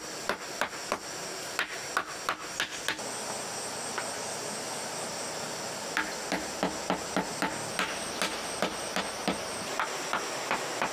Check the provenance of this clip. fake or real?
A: real